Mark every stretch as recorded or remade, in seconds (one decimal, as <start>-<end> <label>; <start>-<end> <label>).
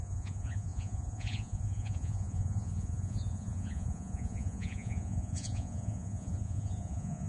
0.0-7.3 remade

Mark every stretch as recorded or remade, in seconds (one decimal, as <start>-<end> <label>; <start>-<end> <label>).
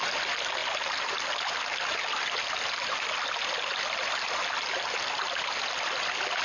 0.0-6.4 recorded